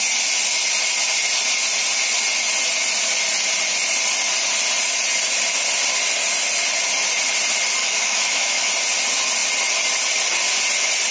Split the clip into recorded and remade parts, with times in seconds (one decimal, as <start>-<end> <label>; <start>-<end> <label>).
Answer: 0.0-7.8 recorded; 7.8-8.7 remade; 8.7-11.1 recorded